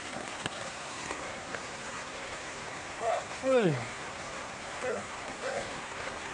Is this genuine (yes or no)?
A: no